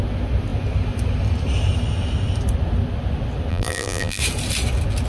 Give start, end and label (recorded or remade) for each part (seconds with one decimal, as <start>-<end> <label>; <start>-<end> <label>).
0.0-3.5 recorded; 3.5-4.2 remade; 4.2-5.1 recorded